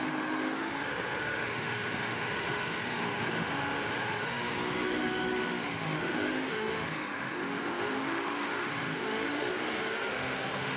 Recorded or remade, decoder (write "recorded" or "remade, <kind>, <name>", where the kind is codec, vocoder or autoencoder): remade, autoencoder, DAC-VAE